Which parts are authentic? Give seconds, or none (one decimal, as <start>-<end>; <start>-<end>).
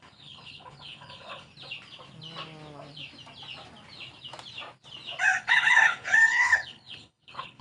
1.5-5.4